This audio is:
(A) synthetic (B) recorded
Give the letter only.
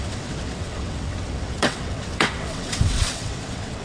A